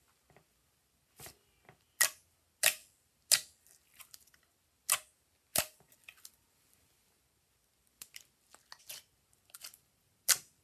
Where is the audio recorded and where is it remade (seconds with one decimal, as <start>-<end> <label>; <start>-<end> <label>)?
0.0-10.6 recorded